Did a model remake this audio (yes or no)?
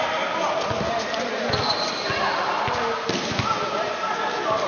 no